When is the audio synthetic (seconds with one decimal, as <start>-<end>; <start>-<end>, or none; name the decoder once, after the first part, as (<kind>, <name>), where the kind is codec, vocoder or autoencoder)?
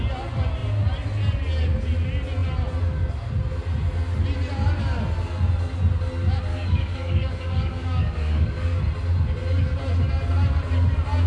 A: 6.5-8.8 (codec, DAC)